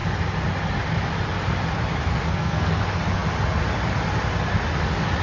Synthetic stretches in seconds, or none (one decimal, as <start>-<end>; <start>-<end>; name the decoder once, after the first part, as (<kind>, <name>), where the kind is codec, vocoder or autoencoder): 2.1-2.8 (codec, SNAC)

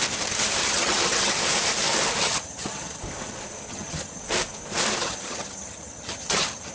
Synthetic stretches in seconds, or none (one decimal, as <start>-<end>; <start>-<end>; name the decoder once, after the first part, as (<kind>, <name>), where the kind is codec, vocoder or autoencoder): 0.6-1.4 (vocoder, HiFi-GAN); 2.2-3.0; 3.7-4.2; 5.0-6.7

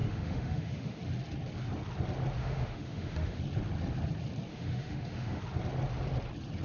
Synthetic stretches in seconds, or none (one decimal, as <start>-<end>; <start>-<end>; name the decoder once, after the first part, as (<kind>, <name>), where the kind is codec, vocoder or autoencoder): 0.0-1.0 (autoencoder, DAC-VAE); 2.4-3.4; 4.5-5.4

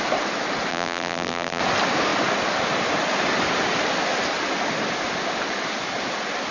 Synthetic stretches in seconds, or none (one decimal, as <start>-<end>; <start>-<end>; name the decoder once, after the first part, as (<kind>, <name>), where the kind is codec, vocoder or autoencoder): 0.7-1.6 (vocoder, BigVGAN v2)

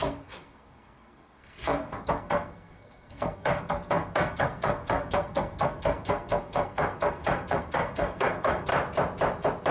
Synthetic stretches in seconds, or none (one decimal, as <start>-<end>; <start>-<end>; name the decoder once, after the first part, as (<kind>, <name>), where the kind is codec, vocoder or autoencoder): 0.0-8.7 (codec, SNAC)

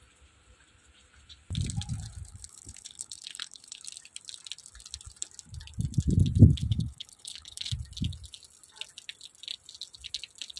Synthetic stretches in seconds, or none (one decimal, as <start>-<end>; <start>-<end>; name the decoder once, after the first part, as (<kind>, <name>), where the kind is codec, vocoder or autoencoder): 2.3-3.8 (codec, HILCodec); 6.6-7.7

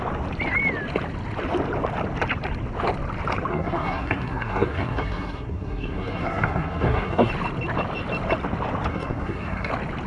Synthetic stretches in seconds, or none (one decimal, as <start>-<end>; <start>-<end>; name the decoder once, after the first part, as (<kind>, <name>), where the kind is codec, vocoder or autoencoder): 3.5-7.3 (codec, SNAC); 8.9-9.7

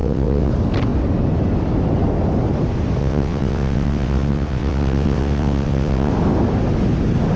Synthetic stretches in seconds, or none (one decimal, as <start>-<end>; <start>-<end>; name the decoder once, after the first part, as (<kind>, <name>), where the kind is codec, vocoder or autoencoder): 0.0-0.5 (vocoder, WaveNeXt); 3.0-6.1